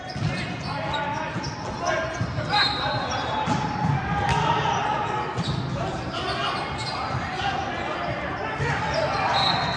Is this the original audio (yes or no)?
yes